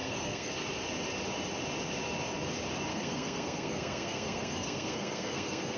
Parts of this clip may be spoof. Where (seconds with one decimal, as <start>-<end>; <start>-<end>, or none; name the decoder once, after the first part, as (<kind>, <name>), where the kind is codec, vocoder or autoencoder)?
0.0-0.5 (codec, SNAC); 2.9-5.8